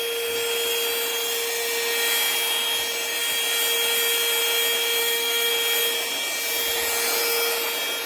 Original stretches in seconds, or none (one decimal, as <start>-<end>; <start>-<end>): 0.0-5.0; 5.5-8.1